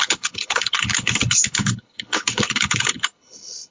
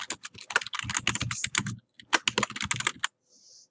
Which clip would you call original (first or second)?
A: second